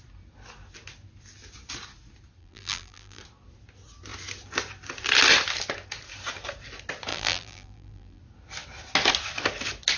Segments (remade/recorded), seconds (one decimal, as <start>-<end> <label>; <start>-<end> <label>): 0.0-2.4 recorded; 2.4-3.2 remade; 3.2-7.1 recorded; 7.1-8.2 remade; 8.2-10.0 recorded